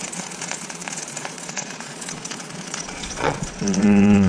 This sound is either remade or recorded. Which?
remade